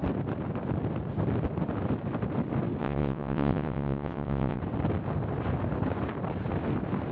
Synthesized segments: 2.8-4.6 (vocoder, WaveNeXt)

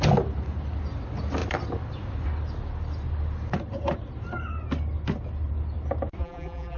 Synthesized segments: 6.2-6.8 (vocoder, BigVGAN v2)